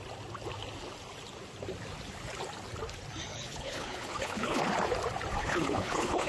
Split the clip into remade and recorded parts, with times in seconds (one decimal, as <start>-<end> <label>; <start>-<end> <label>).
0.0-3.3 recorded; 3.3-4.6 remade; 4.6-5.4 recorded; 5.4-6.3 remade